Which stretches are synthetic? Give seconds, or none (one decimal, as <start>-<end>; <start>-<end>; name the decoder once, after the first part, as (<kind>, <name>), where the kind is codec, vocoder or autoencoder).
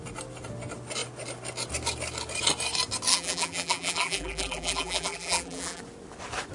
3.1-5.8 (vocoder, BigVGAN v2)